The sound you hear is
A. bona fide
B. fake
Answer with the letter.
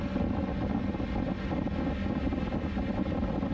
A